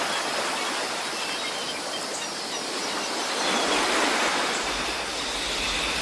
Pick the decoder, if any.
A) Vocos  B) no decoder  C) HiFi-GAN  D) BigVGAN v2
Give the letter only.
B